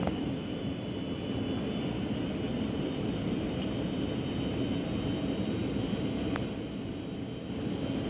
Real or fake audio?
real